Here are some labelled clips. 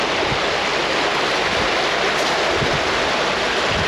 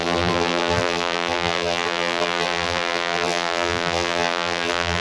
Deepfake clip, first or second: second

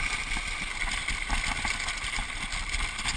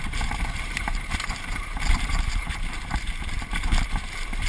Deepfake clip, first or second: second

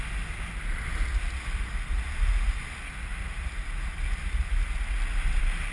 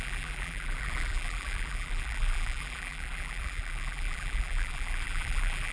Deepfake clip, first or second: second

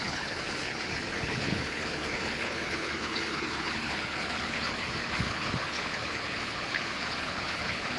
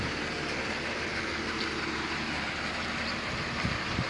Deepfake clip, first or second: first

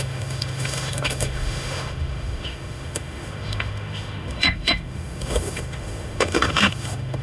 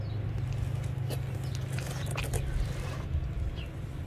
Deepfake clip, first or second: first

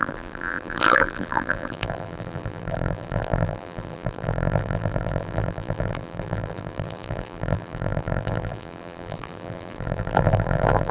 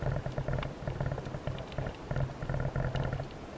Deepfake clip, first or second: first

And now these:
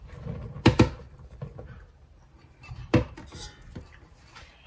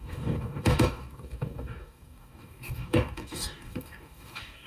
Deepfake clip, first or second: second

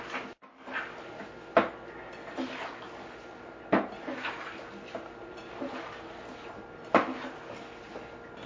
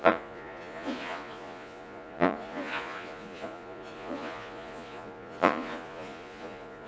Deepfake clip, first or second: second